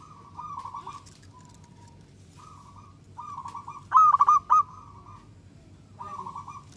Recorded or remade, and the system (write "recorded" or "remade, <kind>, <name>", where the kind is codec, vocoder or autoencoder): recorded